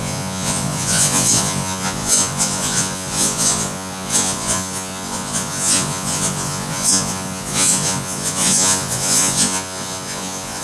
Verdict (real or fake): fake